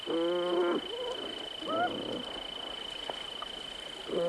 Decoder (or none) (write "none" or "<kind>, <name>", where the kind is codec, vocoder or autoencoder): none